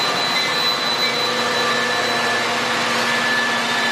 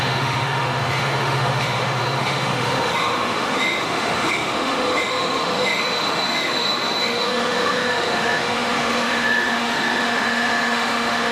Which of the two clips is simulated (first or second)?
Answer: second